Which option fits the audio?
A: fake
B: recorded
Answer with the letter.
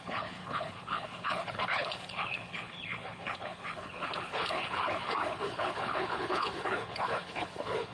A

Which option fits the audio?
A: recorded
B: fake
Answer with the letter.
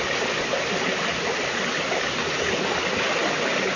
A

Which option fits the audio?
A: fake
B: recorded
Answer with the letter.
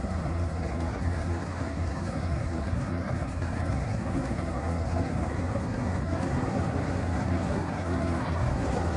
A